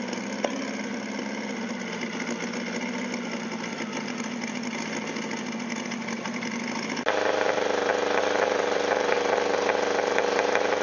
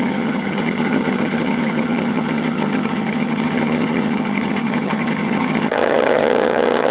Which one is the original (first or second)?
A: first